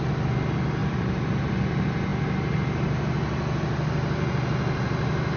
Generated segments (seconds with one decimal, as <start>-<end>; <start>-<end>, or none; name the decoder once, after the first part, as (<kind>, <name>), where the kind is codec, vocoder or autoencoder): 0.8-1.4 (vocoder, BigVGAN v2)